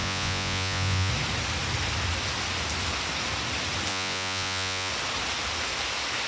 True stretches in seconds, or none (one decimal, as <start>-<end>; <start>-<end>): 1.1-3.9; 4.9-6.3